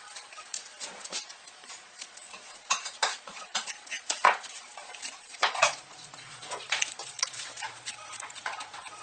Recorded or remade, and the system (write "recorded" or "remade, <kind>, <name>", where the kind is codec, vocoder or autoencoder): remade, vocoder, Vocos